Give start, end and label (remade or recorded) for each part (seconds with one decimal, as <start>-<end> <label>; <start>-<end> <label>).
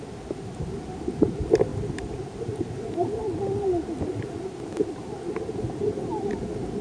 0.0-6.8 recorded